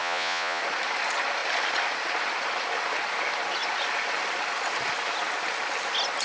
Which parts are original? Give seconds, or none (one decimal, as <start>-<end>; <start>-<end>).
0.6-6.2